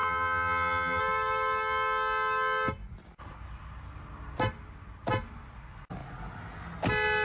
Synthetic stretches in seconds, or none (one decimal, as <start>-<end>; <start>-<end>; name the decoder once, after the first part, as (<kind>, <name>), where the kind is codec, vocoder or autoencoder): 0.0-1.0 (vocoder, HiFi-GAN)